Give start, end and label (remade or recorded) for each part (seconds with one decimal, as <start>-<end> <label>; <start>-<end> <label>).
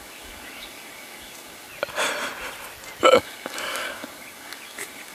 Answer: 0.0-1.7 remade; 1.7-3.1 recorded; 3.1-5.1 remade